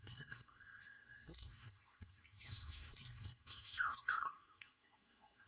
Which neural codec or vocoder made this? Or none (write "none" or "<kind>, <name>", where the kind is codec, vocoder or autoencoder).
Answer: codec, SNAC